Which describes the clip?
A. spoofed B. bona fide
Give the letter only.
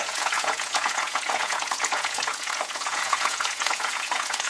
A